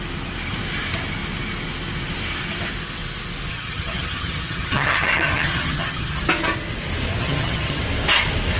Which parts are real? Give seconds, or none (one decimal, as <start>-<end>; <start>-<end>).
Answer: 0.0-3.5; 6.2-7.2; 7.8-8.6